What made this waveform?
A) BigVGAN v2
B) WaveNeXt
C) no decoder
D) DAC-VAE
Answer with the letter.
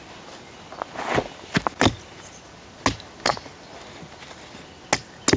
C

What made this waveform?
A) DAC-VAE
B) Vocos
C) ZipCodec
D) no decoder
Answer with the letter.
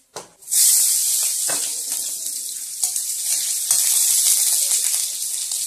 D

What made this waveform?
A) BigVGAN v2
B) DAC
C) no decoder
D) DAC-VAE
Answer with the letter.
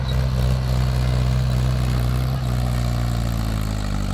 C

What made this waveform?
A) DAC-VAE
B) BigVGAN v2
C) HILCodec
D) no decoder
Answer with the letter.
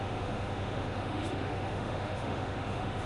A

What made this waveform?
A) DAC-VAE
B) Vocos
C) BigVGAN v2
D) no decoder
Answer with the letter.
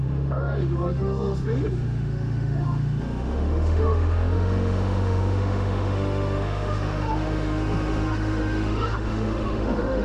A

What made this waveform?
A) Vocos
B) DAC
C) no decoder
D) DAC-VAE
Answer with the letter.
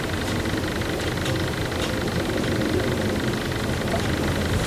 C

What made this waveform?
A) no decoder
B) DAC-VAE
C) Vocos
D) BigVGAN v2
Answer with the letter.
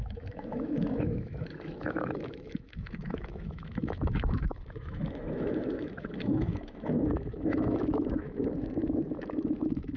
B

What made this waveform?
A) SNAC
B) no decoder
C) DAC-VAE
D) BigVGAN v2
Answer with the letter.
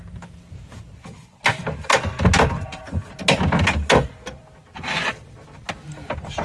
B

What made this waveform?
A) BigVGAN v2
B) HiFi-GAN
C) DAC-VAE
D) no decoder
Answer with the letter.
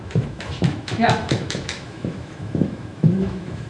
C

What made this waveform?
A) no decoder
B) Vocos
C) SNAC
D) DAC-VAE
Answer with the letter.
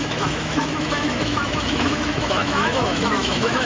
D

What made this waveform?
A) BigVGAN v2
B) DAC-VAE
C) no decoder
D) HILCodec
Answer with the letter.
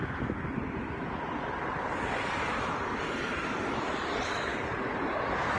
C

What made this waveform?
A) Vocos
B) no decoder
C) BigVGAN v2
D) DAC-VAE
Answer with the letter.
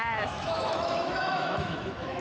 D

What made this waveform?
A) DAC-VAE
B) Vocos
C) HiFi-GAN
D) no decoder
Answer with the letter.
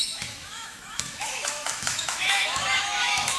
A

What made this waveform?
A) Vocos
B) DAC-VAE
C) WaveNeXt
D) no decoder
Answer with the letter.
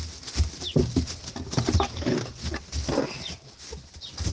D